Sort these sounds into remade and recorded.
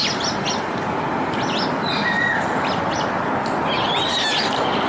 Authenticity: recorded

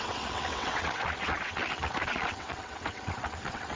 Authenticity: remade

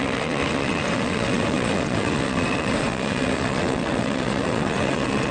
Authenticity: remade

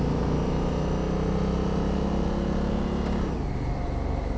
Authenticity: recorded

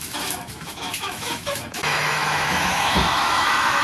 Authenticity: remade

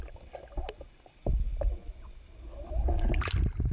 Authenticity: recorded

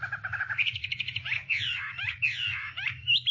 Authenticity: remade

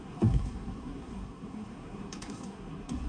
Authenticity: remade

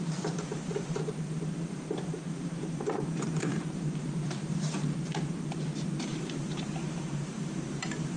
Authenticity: remade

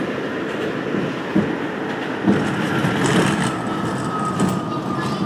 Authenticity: recorded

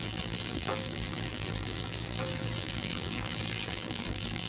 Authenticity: remade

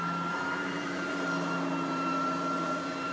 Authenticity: remade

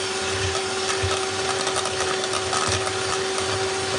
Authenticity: recorded